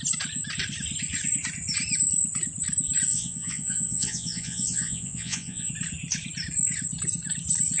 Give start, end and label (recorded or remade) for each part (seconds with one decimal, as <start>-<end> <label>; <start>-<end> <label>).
0.0-3.1 recorded; 3.1-5.7 remade; 5.7-7.8 recorded